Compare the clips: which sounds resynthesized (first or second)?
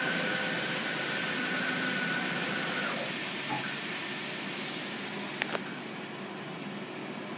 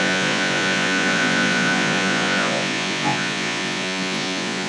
second